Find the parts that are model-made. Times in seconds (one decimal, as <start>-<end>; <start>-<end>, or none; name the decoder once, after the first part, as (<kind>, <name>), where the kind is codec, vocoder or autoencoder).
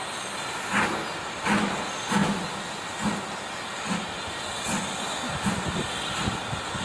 none